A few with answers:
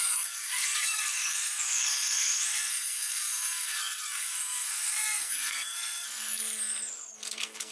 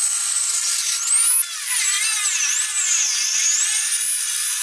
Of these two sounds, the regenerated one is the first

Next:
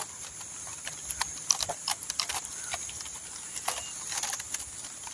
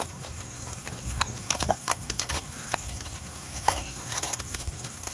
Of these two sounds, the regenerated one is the second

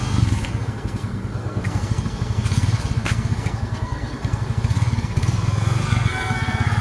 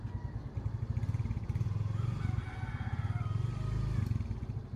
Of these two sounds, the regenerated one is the first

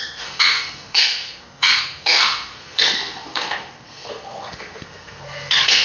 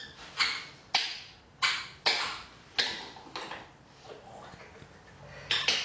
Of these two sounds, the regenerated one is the first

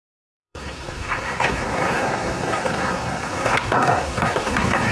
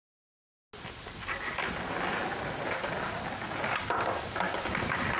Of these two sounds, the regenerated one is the first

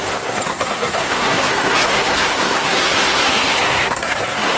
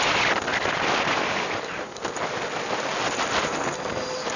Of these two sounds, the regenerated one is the first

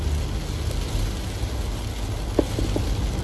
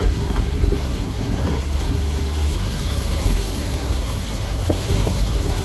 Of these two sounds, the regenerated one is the second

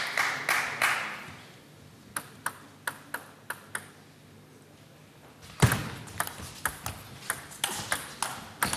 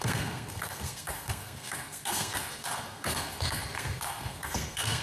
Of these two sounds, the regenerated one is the second